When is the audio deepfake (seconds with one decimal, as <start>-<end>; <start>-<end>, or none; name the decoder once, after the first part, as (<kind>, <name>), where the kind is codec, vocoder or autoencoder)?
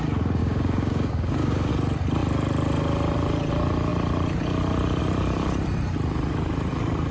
0.4-1.7 (codec, DAC)